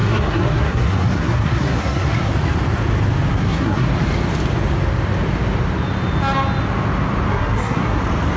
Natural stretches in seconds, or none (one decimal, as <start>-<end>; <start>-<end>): 2.3-3.3; 3.9-7.3; 8.0-8.4